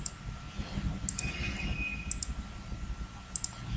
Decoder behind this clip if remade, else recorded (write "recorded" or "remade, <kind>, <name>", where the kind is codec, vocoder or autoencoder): recorded